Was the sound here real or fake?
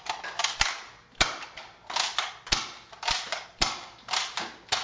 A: real